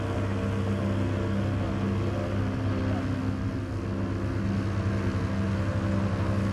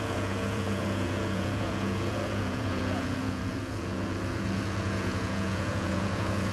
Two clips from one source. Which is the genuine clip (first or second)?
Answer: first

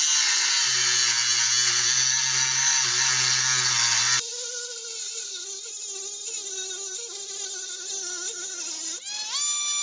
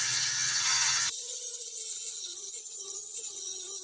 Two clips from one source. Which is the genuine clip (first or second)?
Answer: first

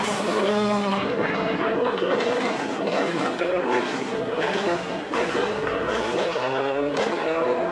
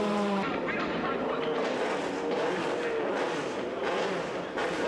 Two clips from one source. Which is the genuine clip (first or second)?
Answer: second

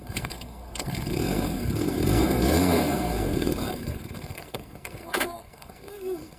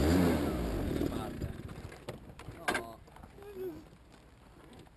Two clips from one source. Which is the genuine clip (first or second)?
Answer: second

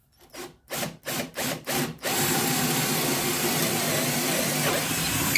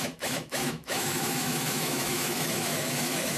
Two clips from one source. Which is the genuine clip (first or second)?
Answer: first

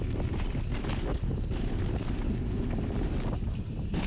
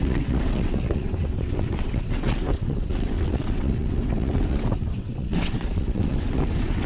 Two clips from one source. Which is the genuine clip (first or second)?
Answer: first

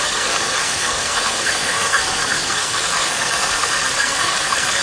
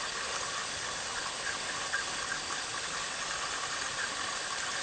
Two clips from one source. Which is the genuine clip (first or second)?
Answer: second